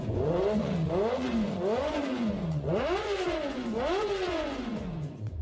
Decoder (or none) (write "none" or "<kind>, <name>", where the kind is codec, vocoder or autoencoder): vocoder, Vocos